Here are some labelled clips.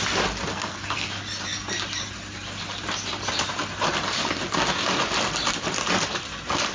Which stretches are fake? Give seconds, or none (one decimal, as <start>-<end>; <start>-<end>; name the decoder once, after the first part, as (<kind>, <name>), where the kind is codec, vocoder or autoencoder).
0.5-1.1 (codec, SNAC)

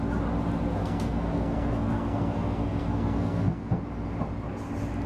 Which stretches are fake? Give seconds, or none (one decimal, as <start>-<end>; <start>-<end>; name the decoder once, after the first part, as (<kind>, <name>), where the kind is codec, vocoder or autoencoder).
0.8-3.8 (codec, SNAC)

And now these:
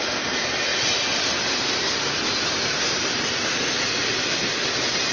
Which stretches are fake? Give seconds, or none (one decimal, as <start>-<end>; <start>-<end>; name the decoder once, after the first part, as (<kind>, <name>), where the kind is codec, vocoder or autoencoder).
none

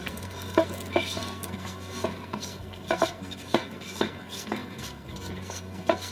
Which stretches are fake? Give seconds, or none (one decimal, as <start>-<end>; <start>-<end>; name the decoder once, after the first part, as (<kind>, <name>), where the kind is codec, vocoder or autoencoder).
0.0-6.1 (codec, SNAC)

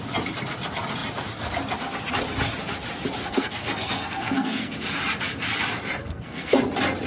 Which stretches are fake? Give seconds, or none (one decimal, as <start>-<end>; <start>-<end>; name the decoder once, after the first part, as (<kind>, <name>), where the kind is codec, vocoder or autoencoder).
3.2-4.8 (codec, SNAC); 6.0-6.6

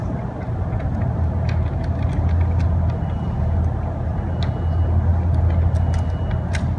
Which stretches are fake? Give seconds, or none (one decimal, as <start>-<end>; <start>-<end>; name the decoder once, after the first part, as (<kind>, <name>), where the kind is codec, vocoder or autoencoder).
none

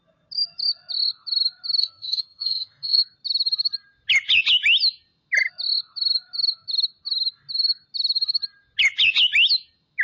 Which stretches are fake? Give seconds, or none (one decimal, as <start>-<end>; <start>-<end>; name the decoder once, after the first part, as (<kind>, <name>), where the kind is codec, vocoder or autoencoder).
1.8-3.0 (codec, SNAC)

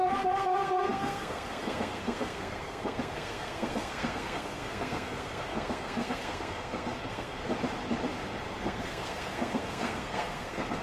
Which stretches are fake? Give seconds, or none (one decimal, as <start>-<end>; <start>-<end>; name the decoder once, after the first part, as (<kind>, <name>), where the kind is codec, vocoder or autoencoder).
0.0-7.5 (codec, SNAC); 8.6-10.8